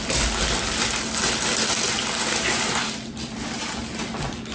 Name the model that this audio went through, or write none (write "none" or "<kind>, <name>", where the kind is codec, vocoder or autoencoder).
none